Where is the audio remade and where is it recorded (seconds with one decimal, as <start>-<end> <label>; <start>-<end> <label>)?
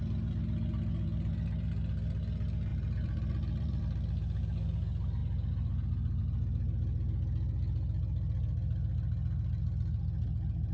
0.0-2.7 recorded; 2.7-3.8 remade; 3.8-10.7 recorded